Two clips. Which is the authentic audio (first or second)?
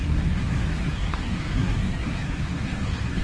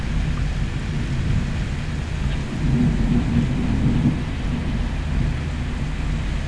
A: second